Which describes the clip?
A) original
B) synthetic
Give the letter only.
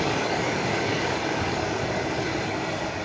B